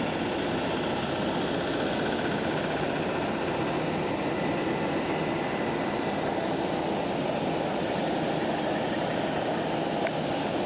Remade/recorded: recorded